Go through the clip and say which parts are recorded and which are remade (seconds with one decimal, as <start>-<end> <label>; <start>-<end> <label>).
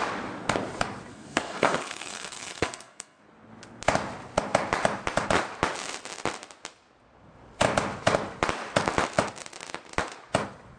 0.0-1.1 recorded; 1.1-3.2 remade; 3.2-10.8 recorded